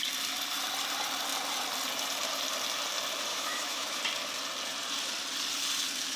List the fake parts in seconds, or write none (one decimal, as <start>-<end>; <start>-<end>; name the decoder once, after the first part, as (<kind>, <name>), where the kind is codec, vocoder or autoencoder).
3.3-4.0 (autoencoder, DAC-VAE)